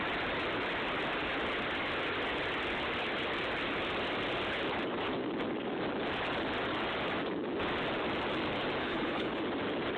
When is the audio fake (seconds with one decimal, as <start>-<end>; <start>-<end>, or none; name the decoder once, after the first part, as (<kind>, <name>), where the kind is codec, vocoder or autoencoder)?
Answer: 8.8-9.4 (codec, HILCodec)